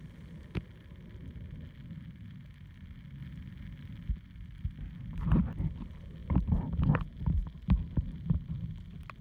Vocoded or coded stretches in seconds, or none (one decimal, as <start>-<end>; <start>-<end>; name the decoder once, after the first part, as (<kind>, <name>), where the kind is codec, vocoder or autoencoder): none